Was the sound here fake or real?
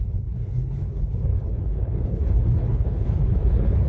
fake